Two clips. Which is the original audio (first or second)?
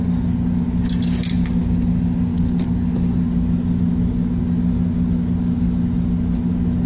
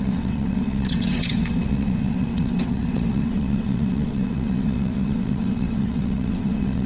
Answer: first